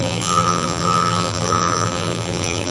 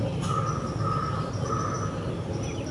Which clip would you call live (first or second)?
second